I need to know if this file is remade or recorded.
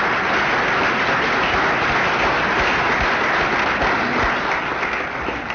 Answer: recorded